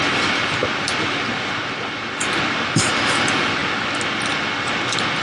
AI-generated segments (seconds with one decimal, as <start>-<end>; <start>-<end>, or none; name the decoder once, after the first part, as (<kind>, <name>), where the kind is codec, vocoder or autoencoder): none